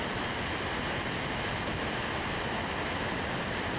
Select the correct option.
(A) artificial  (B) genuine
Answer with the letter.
B